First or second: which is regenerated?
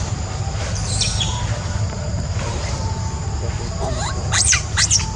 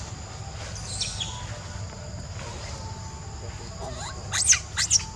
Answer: first